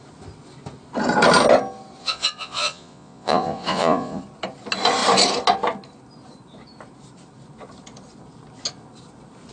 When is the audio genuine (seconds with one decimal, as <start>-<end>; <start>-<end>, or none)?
0.0-2.0; 4.2-9.5